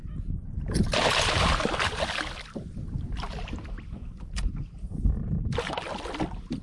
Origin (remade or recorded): recorded